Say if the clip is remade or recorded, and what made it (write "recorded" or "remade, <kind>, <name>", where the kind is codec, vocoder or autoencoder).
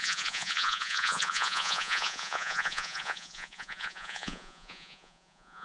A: remade, vocoder, Vocos